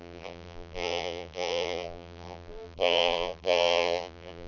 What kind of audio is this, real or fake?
fake